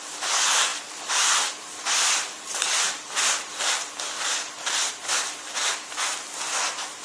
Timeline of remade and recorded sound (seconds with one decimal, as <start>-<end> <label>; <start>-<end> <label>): 0.0-0.7 recorded; 0.7-4.9 remade; 4.9-7.0 recorded